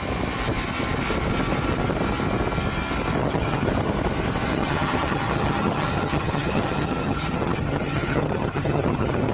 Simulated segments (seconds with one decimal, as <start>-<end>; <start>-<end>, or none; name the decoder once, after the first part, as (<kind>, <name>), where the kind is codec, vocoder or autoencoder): 3.2-3.7 (vocoder, HiFi-GAN); 4.5-9.3